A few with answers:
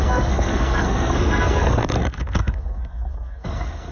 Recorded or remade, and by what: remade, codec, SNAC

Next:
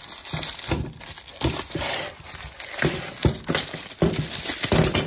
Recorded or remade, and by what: recorded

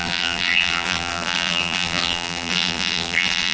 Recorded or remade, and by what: remade, vocoder, BigVGAN v2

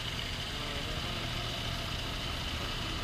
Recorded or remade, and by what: recorded